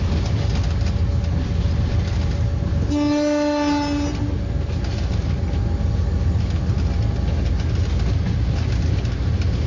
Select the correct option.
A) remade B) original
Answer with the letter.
B